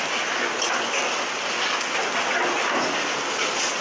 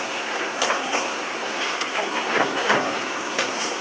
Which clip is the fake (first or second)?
second